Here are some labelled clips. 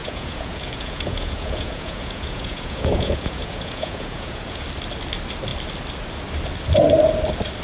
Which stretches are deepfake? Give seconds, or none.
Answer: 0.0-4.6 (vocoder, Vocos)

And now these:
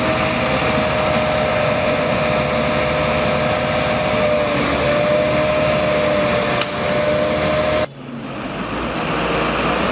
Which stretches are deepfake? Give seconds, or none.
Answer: 1.5-2.2 (vocoder, Vocos)

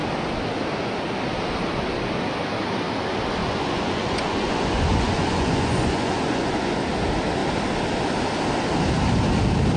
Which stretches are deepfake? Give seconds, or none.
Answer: 3.4-6.7 (vocoder, Vocos)